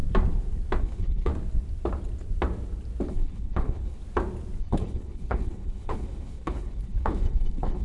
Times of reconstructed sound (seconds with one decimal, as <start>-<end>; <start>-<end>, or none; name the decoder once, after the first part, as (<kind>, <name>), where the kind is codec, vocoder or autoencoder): 0.8-1.3 (codec, HILCodec); 3.1-4.0; 4.6-7.8